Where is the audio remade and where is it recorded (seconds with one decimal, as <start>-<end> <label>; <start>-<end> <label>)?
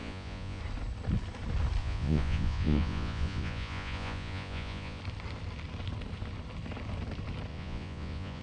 0.0-0.6 remade; 0.6-1.8 recorded; 1.8-5.0 remade; 5.0-7.5 recorded; 7.5-8.4 remade